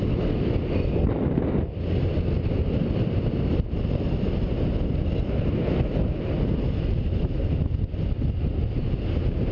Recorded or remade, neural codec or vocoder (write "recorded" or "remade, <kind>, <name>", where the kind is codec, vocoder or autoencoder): recorded